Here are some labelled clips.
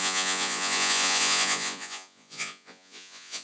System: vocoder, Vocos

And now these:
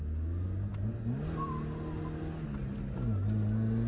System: none